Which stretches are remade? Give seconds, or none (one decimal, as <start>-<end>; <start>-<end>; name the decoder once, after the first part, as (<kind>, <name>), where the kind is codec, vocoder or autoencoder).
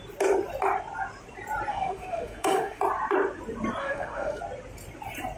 1.7-2.8 (autoencoder, DAC-VAE); 3.8-4.4